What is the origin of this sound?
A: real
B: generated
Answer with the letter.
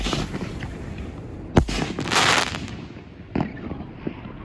A